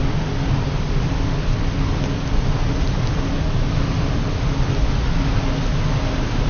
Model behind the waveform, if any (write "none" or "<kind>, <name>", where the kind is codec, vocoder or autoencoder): none